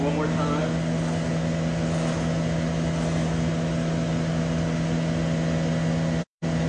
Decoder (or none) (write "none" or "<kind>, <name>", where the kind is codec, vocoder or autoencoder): none